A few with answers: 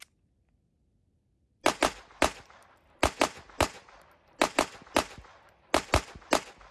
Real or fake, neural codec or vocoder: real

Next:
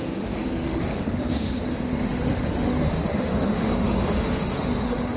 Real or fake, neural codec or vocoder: fake, autoencoder, DAC-VAE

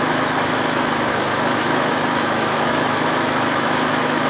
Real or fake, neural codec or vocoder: fake, autoencoder, DAC-VAE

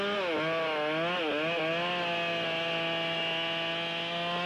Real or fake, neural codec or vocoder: real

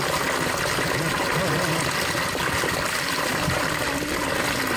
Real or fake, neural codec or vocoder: real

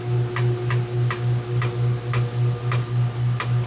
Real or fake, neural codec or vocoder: real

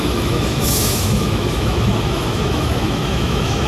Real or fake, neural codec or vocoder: fake, autoencoder, DAC-VAE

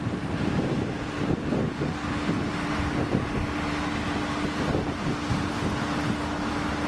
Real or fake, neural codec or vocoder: real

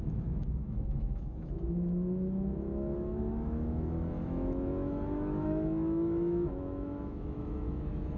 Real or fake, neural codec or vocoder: fake, autoencoder, DAC-VAE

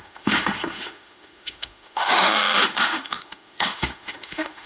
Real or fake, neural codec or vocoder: fake, autoencoder, DAC-VAE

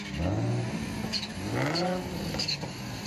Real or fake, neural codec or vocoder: real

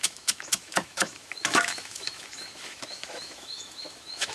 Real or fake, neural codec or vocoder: fake, autoencoder, DAC-VAE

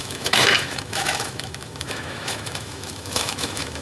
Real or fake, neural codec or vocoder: fake, autoencoder, DAC-VAE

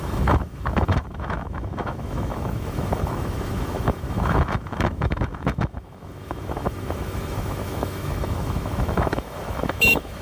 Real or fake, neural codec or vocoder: fake, autoencoder, DAC-VAE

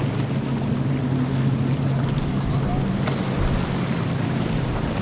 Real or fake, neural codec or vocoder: real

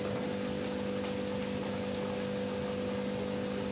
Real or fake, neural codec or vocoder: real